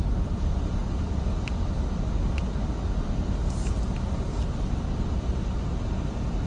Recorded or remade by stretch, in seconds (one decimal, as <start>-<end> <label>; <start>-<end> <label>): 0.0-6.5 recorded